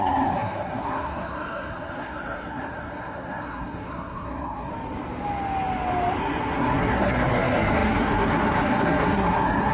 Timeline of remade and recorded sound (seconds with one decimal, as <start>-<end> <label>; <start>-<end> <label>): 0.0-4.7 remade; 4.7-6.2 recorded; 6.2-9.7 remade